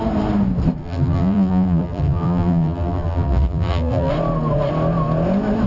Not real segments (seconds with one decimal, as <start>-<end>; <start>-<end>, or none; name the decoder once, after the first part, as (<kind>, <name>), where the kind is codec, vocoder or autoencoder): 0.8-4.1 (vocoder, BigVGAN v2)